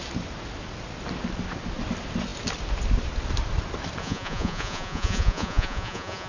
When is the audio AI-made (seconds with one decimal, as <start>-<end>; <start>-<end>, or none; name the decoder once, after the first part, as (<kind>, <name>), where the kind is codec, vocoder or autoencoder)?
4.0-6.3 (vocoder, Vocos)